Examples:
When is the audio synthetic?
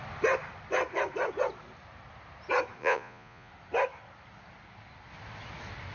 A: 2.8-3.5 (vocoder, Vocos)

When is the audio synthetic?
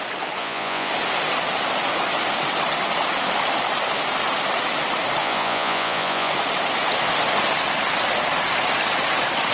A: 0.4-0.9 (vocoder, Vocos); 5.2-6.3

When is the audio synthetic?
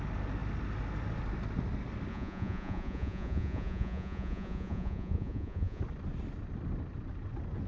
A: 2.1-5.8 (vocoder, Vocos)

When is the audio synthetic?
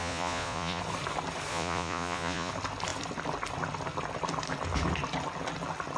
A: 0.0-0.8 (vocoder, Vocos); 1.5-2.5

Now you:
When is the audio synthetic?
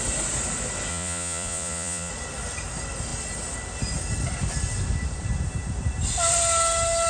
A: 0.9-2.1 (vocoder, Vocos)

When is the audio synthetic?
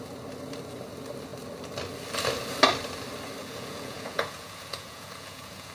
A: 3.4-5.7 (vocoder, Vocos)